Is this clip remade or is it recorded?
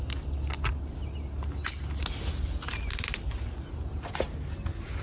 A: recorded